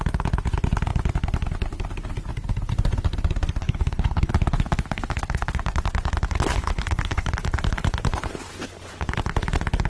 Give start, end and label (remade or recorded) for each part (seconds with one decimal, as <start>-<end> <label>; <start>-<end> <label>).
0.0-3.6 recorded; 3.6-4.3 remade; 4.3-6.5 recorded; 6.5-7.3 remade; 7.3-9.9 recorded

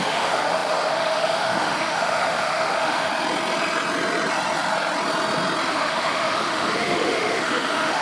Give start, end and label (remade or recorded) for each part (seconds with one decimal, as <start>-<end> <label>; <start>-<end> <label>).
0.0-3.1 remade; 3.1-5.7 recorded; 5.7-8.0 remade

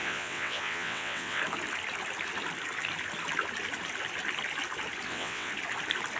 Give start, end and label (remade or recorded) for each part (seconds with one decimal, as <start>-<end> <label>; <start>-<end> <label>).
0.0-1.4 remade; 1.4-5.1 recorded; 5.1-5.5 remade; 5.5-6.2 recorded